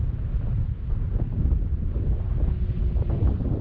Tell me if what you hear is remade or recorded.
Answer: recorded